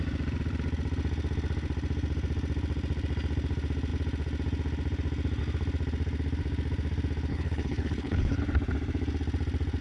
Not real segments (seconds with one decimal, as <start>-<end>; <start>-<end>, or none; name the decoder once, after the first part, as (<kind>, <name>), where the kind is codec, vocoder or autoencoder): 7.3-8.4 (codec, HILCodec)